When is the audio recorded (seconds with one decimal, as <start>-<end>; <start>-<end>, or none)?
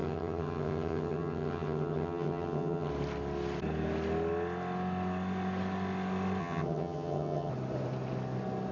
2.9-6.4; 7.5-8.7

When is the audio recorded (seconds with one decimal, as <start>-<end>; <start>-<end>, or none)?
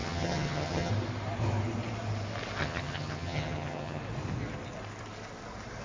0.9-2.6; 4.0-5.8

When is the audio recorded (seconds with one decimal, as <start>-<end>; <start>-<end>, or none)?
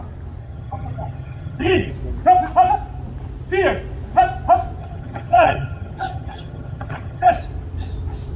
0.0-0.4; 1.9-4.8; 7.3-8.4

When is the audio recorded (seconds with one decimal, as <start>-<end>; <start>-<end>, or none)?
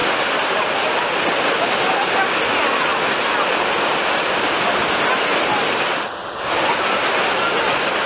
0.0-8.1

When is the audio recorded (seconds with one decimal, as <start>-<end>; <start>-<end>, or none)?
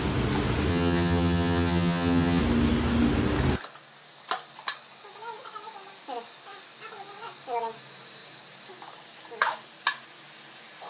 0.0-0.7; 2.4-10.9